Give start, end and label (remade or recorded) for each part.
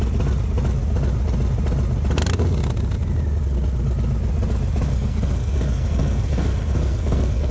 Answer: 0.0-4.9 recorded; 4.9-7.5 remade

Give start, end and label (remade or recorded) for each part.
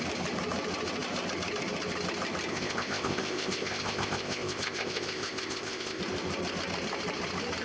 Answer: 0.0-2.5 recorded; 2.5-6.0 remade; 6.0-7.6 recorded